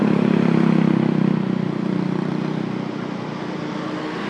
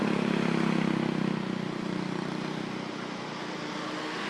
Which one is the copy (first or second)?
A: first